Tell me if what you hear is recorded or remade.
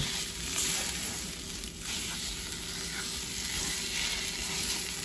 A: recorded